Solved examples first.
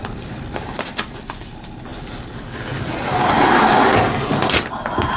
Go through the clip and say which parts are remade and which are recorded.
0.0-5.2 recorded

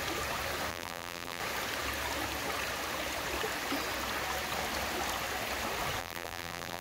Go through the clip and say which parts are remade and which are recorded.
0.0-0.7 recorded; 0.7-1.4 remade; 1.4-6.0 recorded; 6.0-6.8 remade

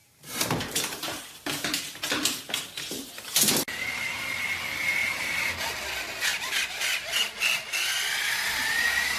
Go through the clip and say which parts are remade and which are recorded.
0.0-0.8 remade; 0.8-5.0 recorded; 5.0-5.5 remade; 5.5-9.2 recorded

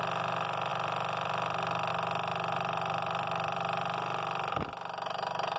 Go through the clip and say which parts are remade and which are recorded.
0.0-0.7 recorded; 0.7-1.9 remade; 1.9-2.3 recorded; 2.3-4.5 remade; 4.5-5.6 recorded

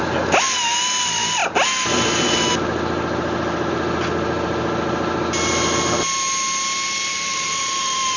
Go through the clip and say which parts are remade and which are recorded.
0.0-7.1 recorded; 7.1-8.2 remade